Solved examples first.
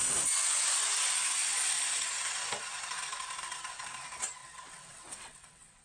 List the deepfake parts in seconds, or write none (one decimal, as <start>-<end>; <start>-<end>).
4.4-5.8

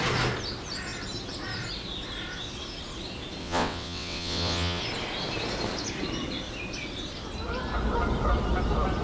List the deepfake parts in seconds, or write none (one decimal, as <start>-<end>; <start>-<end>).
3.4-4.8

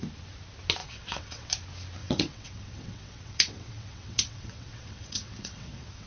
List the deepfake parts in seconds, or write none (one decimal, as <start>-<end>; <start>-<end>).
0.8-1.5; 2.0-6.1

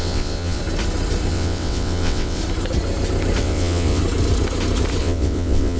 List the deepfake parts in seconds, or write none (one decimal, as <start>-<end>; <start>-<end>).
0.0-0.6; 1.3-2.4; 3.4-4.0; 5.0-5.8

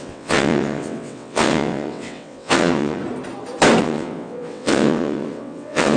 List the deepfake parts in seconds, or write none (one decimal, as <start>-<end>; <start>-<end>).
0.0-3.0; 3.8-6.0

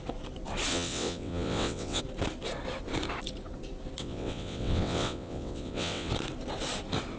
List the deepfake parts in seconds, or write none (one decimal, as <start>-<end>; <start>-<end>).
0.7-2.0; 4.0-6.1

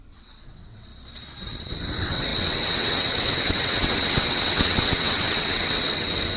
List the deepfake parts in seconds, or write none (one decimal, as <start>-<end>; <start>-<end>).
0.0-0.9; 1.6-6.4

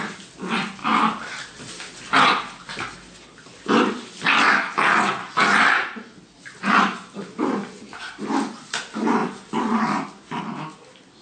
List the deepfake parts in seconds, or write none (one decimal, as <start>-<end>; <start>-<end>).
none